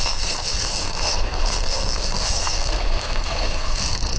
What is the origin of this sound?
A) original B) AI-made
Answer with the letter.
B